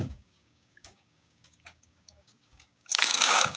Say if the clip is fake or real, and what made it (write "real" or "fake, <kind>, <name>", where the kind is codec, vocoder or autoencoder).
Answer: fake, codec, DAC